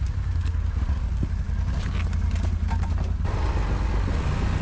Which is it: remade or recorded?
recorded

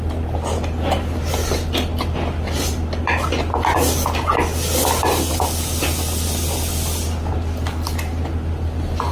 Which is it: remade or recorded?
recorded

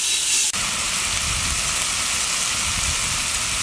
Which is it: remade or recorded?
recorded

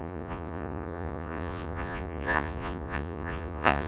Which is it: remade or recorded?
remade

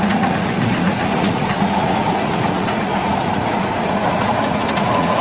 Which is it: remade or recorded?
remade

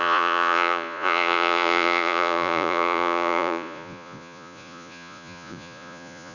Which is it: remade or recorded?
remade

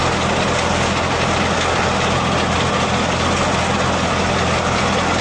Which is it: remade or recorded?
recorded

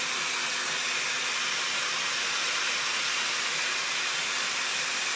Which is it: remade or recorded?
recorded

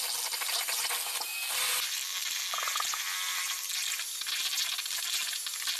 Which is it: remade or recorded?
recorded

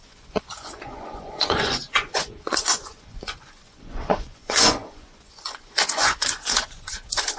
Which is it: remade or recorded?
remade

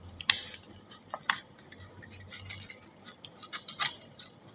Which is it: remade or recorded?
recorded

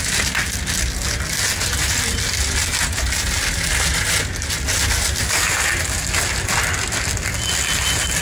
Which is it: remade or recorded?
recorded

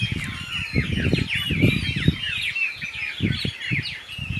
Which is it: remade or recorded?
recorded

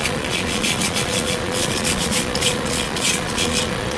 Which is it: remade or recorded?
remade